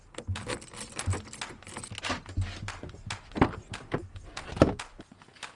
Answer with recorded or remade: recorded